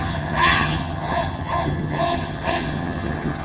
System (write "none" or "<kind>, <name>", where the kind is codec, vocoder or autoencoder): vocoder, HiFi-GAN